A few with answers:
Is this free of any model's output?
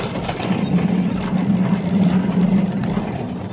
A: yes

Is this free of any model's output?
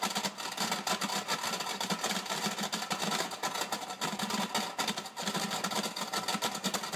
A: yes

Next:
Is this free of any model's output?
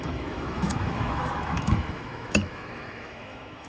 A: no